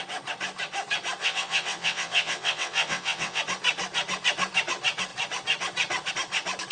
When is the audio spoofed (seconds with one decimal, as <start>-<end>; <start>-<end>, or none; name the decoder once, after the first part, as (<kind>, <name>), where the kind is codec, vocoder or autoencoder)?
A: 1.2-3.4 (vocoder, WaveNeXt)